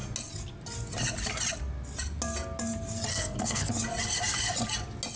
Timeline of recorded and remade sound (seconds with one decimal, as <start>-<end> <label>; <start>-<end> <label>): 0.0-3.1 recorded; 3.1-3.7 remade; 3.7-5.2 recorded